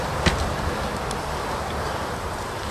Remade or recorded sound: recorded